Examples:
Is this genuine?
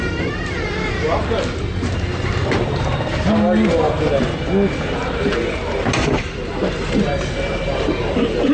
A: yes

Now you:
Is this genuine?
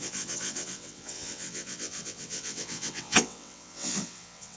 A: no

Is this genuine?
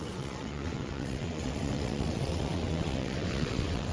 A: no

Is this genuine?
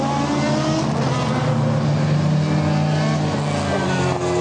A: yes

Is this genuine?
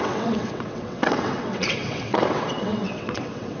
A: no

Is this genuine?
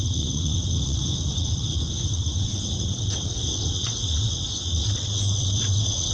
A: no